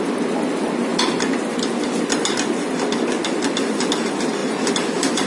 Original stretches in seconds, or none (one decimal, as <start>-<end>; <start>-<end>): 0.0-5.3